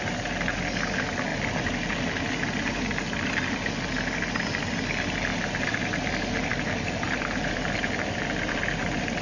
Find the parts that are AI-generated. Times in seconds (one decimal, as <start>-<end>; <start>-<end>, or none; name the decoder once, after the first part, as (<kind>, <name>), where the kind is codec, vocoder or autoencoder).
1.3-1.9 (vocoder, BigVGAN v2); 5.3-6.1; 6.5-9.2